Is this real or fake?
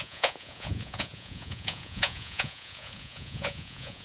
fake